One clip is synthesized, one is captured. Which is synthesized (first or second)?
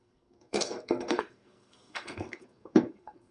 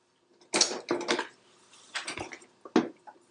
first